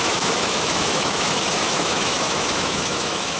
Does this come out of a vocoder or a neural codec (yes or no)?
yes